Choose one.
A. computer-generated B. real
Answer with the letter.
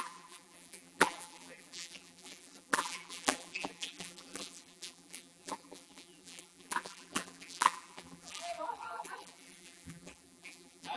A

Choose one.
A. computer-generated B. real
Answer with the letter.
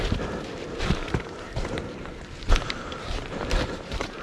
A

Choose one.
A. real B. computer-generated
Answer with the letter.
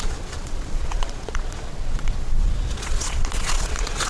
B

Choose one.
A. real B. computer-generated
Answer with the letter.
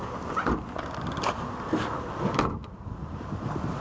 A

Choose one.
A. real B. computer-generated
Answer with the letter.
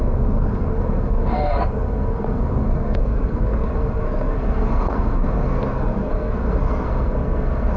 B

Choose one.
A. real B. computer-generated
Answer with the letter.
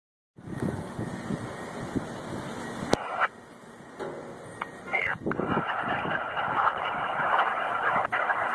A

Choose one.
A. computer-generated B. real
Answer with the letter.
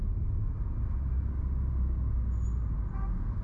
B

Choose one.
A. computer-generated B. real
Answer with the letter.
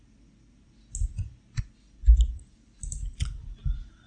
B